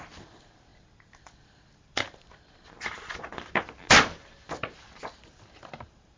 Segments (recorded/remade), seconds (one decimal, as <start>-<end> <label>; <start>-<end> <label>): 0.0-6.2 recorded